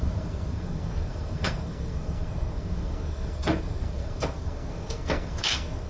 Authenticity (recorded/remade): remade